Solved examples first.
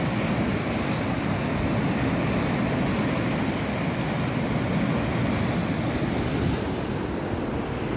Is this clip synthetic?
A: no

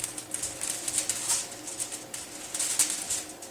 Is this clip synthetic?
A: no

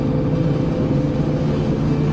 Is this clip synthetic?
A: no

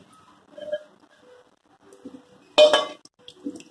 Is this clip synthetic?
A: no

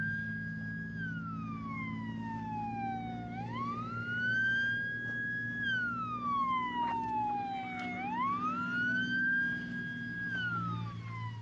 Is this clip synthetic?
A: no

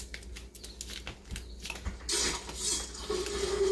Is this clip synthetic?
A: no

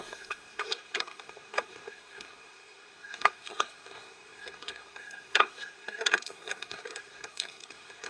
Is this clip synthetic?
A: yes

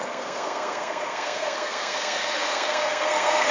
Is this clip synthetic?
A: yes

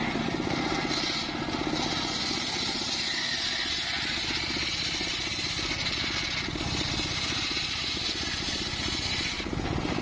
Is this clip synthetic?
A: no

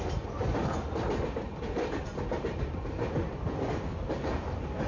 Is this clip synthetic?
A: no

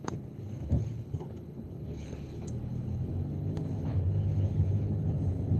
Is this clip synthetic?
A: yes